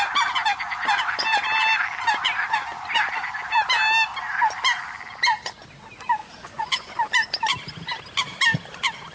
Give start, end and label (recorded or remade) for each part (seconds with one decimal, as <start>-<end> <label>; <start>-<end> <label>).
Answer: 0.0-6.2 recorded; 6.2-6.9 remade; 6.9-9.1 recorded

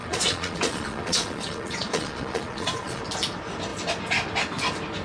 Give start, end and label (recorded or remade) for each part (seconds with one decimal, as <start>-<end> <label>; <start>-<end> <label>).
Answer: 0.0-3.0 remade; 3.0-5.0 recorded